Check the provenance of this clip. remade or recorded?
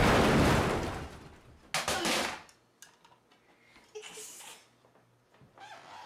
recorded